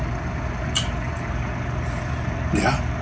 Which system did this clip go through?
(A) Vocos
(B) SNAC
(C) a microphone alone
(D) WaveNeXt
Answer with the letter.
C